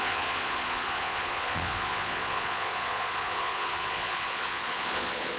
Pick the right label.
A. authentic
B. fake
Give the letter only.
B